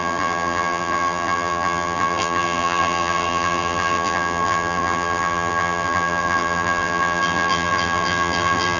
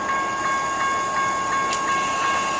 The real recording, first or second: second